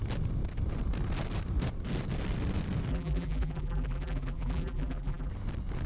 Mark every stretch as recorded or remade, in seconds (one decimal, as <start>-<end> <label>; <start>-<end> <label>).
0.0-2.9 recorded; 2.9-5.3 remade; 5.3-5.9 recorded